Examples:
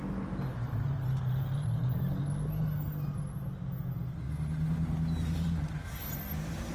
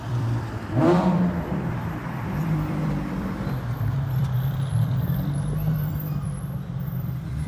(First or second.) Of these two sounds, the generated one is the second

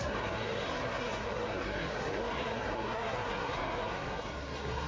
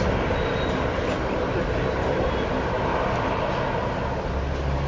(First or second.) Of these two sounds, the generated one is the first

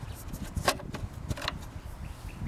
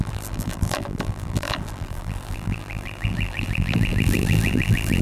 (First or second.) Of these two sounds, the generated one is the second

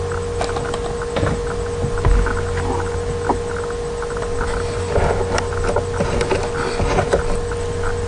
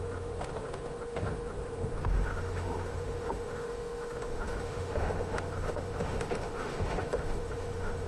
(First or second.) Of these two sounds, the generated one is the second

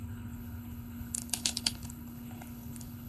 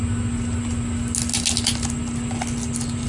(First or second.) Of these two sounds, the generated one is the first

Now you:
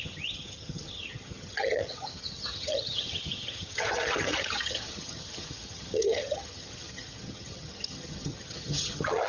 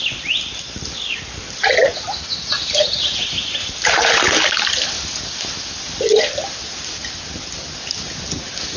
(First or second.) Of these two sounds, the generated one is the first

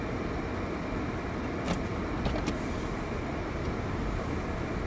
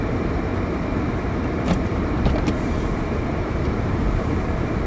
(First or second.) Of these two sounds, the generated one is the second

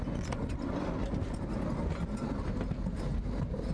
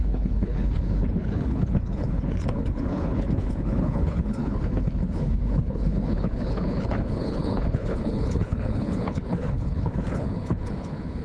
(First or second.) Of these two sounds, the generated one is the second